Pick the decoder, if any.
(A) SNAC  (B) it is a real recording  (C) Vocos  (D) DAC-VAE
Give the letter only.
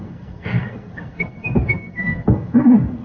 A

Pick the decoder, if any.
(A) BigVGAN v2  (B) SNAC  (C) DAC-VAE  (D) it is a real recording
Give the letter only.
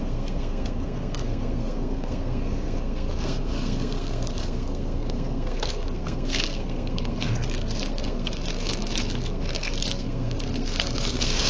B